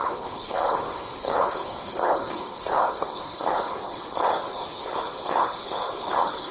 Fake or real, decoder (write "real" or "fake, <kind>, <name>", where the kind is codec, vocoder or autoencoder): fake, codec, HILCodec